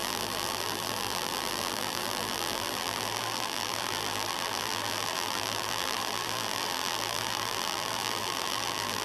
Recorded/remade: remade